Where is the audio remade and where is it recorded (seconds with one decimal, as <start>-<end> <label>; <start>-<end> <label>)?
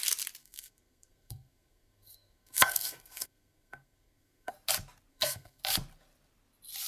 0.0-0.4 recorded; 0.4-4.5 remade; 4.5-5.1 recorded; 5.1-5.6 remade; 5.6-6.9 recorded